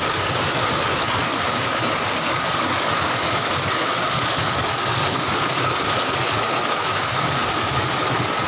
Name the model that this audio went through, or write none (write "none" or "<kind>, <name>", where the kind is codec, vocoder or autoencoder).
codec, DAC